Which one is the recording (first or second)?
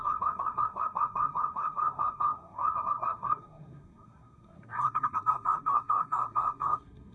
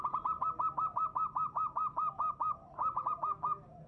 second